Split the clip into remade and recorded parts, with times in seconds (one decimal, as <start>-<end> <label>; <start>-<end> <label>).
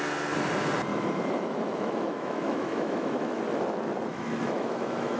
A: 0.0-0.9 recorded; 0.9-3.4 remade; 3.4-4.1 recorded; 4.1-5.2 remade